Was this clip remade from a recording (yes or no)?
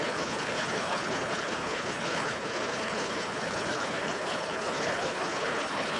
yes